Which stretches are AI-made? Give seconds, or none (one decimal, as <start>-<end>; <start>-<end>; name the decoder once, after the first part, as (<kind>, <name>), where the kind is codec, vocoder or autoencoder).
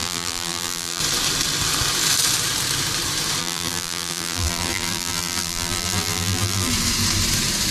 0.0-1.0 (vocoder, BigVGAN v2); 3.4-6.7